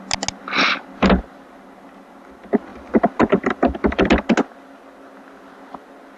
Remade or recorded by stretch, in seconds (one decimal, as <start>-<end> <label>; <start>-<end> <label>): 0.0-2.7 recorded; 2.7-3.3 remade; 3.3-6.2 recorded